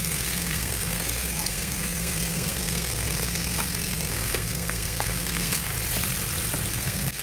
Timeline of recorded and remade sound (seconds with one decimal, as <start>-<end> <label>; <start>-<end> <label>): 0.0-5.7 remade; 5.7-6.7 recorded; 6.7-7.2 remade